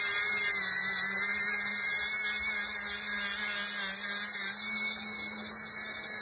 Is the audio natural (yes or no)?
yes